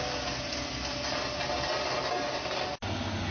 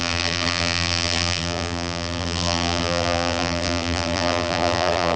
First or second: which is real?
first